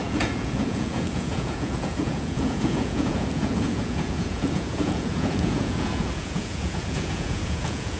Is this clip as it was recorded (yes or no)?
no